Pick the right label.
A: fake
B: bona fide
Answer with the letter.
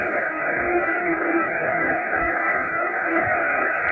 A